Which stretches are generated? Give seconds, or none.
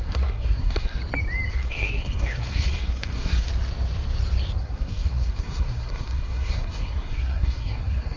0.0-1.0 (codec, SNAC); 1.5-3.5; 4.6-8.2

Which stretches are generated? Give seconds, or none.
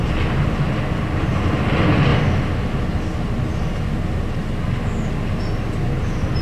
none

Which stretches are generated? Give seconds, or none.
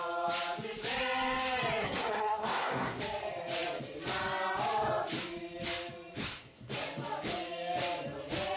1.8-3.0 (codec, SNAC); 6.2-6.7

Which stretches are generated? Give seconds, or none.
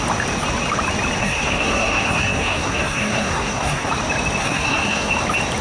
1.2-3.9 (codec, SNAC); 4.4-5.1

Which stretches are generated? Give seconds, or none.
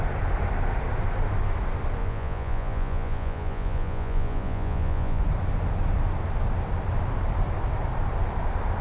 2.0-5.2 (vocoder, Vocos)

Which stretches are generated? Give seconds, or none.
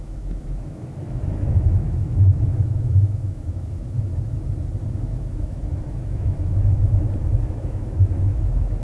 0.0-4.1 (autoencoder, DAC-VAE); 4.9-8.8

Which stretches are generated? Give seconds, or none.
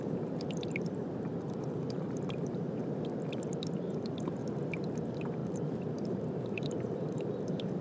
0.0-2.8 (vocoder, BigVGAN v2); 3.3-4.4; 5.0-7.8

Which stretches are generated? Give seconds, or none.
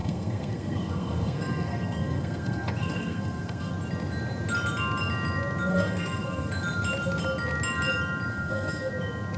0.0-3.7 (codec, SNAC); 5.7-6.5; 8.3-8.9